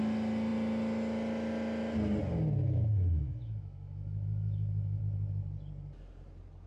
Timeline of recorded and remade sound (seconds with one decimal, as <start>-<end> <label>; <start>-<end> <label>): 0.0-2.6 recorded; 2.6-5.0 remade; 5.0-6.7 recorded